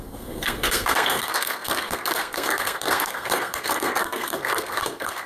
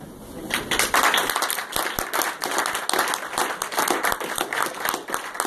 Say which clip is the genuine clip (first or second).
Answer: second